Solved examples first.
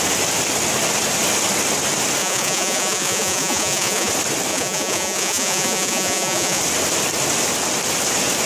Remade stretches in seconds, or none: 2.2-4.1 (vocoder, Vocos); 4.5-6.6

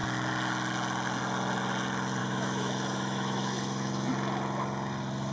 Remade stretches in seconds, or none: 2.2-4.1 (autoencoder, DAC-VAE)

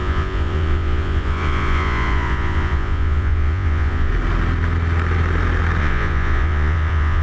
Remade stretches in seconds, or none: 0.0-4.1 (vocoder, Vocos); 5.8-7.2